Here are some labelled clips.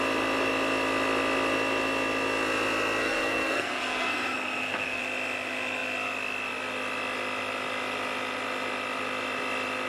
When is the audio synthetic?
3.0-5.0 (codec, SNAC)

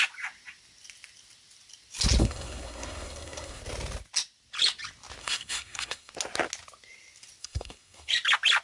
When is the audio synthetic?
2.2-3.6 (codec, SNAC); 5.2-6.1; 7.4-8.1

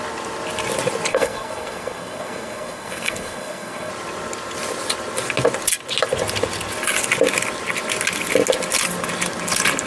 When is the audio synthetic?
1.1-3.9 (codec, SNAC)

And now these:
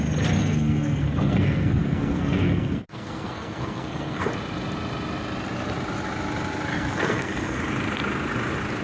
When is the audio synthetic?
0.4-4.3 (codec, SNAC); 6.7-7.6